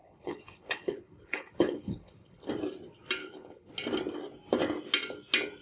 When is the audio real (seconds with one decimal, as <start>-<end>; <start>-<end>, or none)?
2.5-3.2; 3.7-5.6